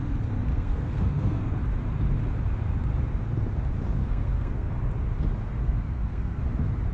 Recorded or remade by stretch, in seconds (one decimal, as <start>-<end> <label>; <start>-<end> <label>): 0.0-0.5 recorded; 0.5-1.6 remade; 1.6-4.0 recorded; 4.0-4.7 remade; 4.7-5.6 recorded; 5.6-6.4 remade; 6.4-6.9 recorded